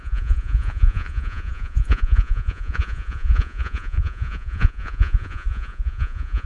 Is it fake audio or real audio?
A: fake